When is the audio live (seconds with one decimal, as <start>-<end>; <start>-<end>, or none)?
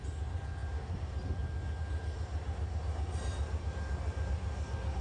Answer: 0.0-5.0